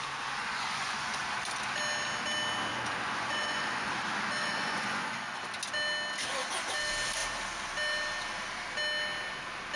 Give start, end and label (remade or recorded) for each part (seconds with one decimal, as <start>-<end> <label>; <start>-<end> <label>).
0.0-0.4 recorded; 0.4-1.2 remade; 1.2-2.7 recorded; 2.7-3.9 remade; 3.9-4.4 recorded; 4.4-5.4 remade; 5.4-9.8 recorded